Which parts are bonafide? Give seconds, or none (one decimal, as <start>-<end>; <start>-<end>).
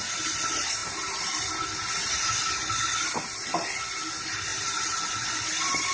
none